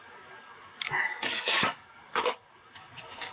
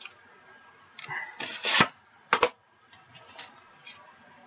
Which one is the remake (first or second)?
first